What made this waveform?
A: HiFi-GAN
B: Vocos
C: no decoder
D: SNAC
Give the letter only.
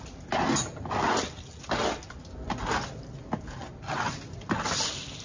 C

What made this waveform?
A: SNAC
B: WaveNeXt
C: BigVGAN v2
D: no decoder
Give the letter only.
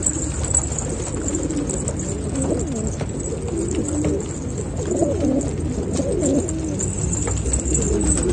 D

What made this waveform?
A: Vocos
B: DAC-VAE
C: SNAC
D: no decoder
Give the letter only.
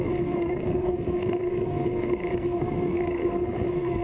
C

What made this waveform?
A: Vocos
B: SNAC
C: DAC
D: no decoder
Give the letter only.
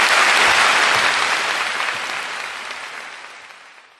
D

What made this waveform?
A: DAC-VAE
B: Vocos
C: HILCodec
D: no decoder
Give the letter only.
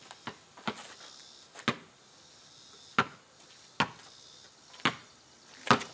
D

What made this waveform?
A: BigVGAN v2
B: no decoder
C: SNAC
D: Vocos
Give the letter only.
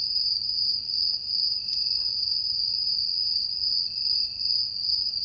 B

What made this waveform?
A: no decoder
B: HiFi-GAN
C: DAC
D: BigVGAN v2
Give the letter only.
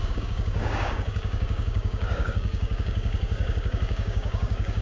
C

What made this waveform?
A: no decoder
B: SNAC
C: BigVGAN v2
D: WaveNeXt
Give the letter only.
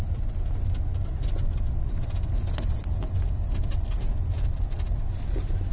A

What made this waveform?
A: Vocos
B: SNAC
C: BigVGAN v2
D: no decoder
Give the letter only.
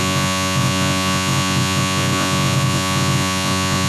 A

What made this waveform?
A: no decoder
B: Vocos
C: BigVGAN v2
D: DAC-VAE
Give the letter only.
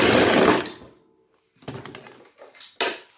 A